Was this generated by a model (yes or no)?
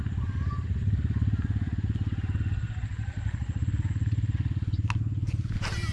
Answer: no